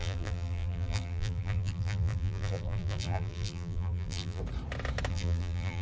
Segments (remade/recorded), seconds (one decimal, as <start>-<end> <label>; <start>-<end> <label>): 0.0-4.4 remade; 4.4-5.1 recorded; 5.1-5.8 remade